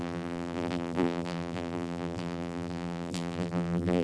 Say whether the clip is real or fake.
fake